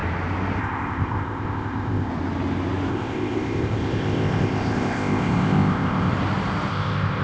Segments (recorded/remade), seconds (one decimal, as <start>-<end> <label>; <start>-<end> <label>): 0.0-0.6 recorded; 0.6-2.1 remade; 2.1-2.9 recorded; 2.9-6.1 remade; 6.1-6.7 recorded; 6.7-7.2 remade